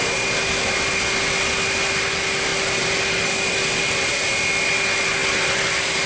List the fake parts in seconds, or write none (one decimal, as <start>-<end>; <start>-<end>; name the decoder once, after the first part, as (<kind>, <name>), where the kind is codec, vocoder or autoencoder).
none